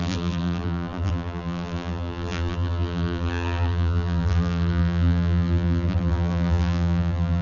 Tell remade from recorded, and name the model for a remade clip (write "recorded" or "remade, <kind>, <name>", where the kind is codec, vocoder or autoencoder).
remade, vocoder, BigVGAN v2